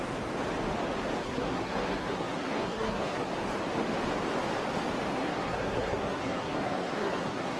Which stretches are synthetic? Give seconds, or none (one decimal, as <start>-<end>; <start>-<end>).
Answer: 1.2-3.3; 5.1-7.6